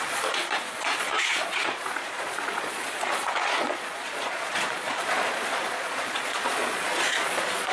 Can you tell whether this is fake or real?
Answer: fake